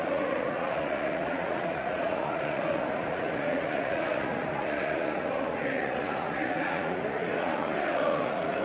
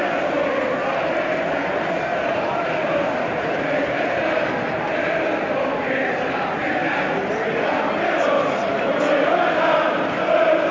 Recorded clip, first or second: second